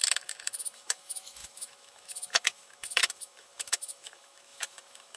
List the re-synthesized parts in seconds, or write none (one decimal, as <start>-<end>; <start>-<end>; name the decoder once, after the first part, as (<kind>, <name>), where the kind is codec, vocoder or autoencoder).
0.0-5.2 (autoencoder, DAC-VAE)